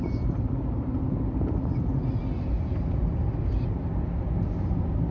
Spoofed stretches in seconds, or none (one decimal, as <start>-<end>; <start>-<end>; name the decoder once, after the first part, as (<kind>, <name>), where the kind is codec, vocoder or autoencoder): none